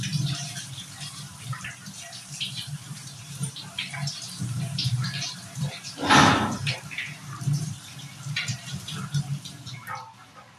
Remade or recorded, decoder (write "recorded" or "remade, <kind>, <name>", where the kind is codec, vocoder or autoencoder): remade, vocoder, BigVGAN v2